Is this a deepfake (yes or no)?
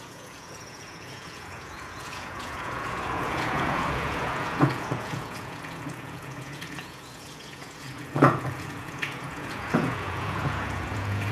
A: yes